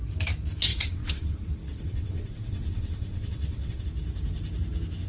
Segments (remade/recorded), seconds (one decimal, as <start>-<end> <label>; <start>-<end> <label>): 0.0-0.7 recorded; 0.7-3.8 remade; 3.8-5.1 recorded